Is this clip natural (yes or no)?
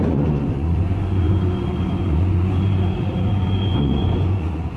no